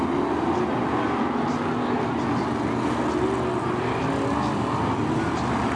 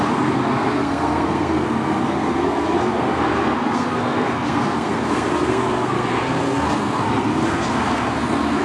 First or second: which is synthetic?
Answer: second